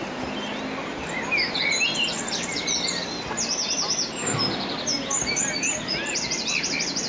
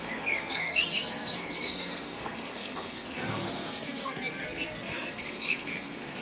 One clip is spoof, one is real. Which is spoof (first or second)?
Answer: second